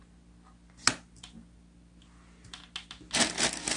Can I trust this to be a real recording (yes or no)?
yes